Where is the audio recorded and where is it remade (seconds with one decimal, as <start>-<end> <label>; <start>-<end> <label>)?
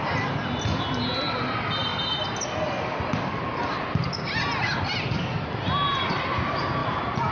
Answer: 0.0-7.3 recorded